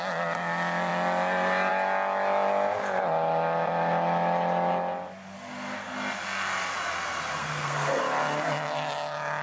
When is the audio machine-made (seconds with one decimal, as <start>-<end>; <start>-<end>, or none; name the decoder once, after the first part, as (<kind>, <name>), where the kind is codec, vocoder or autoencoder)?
7.4-8.0 (codec, SNAC)